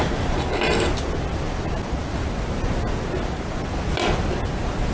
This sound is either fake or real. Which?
real